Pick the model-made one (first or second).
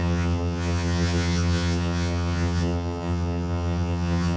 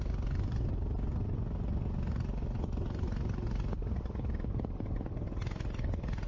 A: first